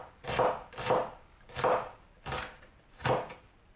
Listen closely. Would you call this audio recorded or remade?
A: recorded